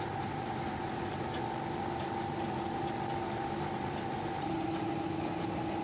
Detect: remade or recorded recorded